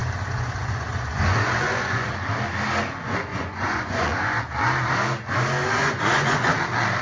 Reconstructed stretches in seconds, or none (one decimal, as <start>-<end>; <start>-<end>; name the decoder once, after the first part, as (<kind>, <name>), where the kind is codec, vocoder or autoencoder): 0.0-2.1 (vocoder, Vocos); 3.3-4.4; 5.8-6.5